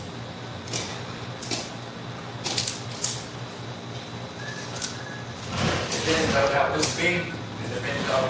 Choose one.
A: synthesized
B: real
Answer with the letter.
B